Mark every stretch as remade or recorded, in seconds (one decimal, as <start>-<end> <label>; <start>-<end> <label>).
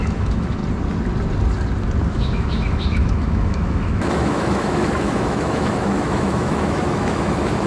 0.0-0.6 remade; 0.6-2.1 recorded; 2.1-7.7 remade